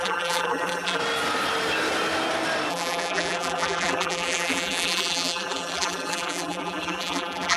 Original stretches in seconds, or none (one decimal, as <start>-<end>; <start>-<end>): 1.0-2.7